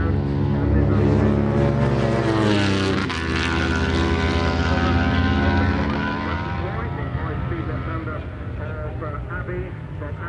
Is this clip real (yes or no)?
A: yes